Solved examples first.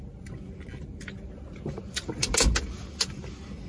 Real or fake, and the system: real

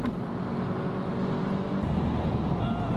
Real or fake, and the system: real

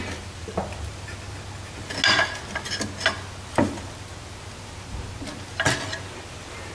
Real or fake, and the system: real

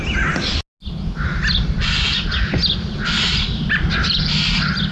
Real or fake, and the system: real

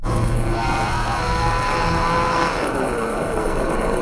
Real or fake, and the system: fake, codec, SNAC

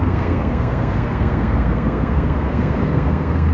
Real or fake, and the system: fake, codec, SNAC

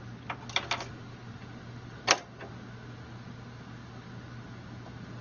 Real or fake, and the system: real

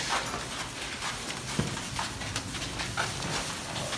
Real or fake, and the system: real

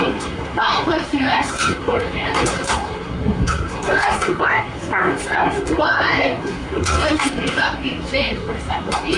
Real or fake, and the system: fake, codec, SNAC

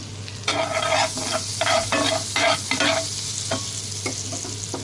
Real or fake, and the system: real